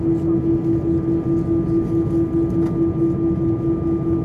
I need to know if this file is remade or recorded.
recorded